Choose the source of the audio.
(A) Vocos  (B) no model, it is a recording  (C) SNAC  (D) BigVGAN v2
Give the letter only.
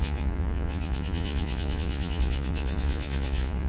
A